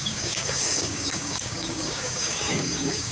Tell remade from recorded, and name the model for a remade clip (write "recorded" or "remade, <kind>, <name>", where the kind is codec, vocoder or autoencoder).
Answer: remade, codec, DAC